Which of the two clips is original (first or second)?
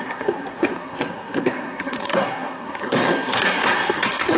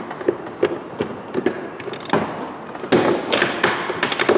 second